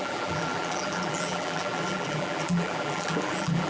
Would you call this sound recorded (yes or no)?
no